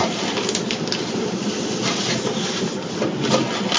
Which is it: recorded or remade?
recorded